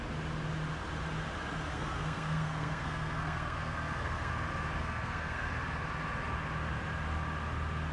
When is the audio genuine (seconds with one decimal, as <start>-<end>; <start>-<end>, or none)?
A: 0.0-1.7; 4.3-4.8; 5.5-7.9